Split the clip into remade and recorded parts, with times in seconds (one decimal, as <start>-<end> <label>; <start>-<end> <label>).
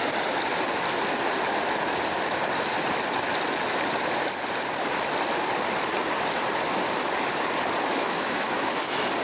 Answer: 0.0-7.9 recorded; 7.9-8.7 remade; 8.7-9.2 recorded